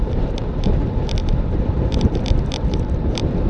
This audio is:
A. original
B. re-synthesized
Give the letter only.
B